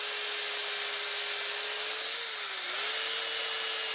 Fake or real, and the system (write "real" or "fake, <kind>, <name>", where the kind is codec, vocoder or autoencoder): real